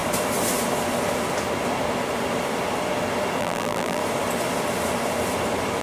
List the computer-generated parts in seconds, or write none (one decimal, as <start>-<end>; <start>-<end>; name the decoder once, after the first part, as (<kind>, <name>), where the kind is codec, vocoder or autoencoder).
3.4-4.0 (vocoder, BigVGAN v2)